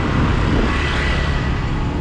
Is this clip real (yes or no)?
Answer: yes